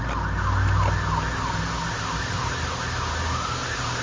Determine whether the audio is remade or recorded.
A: recorded